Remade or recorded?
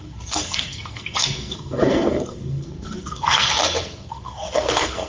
remade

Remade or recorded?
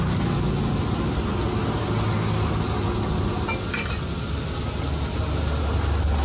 recorded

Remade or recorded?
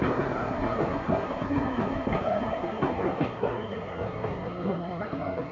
remade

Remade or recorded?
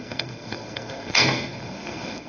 remade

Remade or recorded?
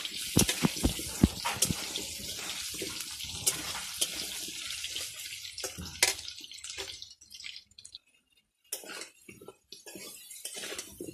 recorded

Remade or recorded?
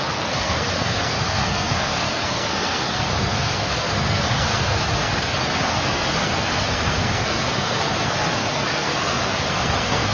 remade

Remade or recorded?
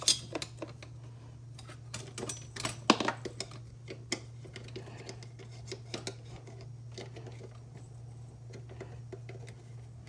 recorded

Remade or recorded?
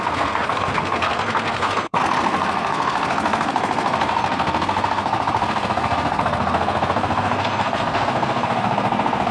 remade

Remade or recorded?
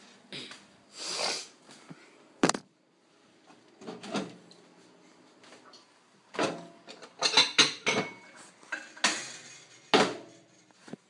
recorded